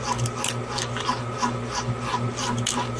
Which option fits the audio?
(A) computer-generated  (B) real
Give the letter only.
B